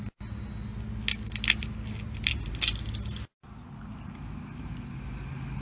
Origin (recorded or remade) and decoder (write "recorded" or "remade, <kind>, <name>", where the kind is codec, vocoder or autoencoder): recorded